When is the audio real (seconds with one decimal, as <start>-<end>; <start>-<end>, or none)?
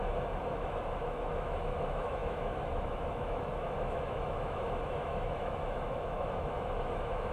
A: none